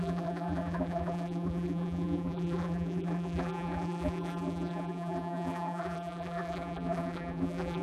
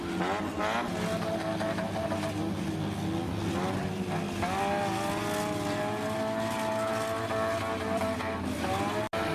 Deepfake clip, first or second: first